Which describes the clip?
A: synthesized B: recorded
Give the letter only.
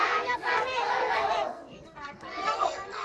A